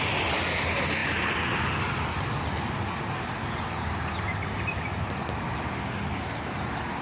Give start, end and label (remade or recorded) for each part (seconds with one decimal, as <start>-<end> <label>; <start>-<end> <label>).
0.0-7.0 recorded